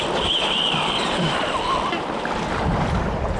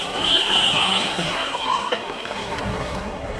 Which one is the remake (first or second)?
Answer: second